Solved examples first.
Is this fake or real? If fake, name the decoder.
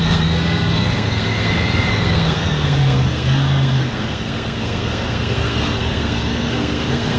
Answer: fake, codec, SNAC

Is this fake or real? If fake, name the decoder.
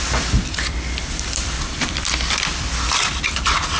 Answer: fake, vocoder, BigVGAN v2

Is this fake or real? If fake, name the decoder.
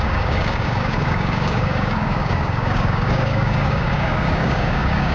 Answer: fake, codec, DAC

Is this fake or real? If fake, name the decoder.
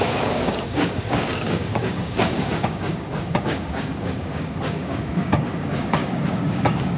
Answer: fake, codec, DAC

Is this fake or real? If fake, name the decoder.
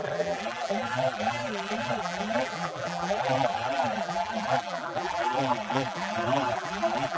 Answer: fake, vocoder, BigVGAN v2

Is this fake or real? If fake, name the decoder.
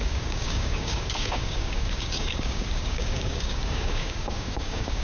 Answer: fake, codec, DAC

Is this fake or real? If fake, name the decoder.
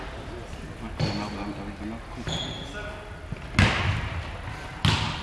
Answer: real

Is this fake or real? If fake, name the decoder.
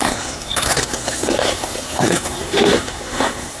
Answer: fake, codec, SNAC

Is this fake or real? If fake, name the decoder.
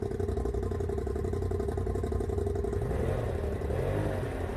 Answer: real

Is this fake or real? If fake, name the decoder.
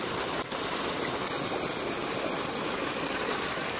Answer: real